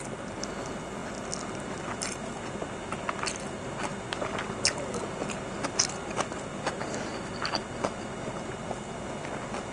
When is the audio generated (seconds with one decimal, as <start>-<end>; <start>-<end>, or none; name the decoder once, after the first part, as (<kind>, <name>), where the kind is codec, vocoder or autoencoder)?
none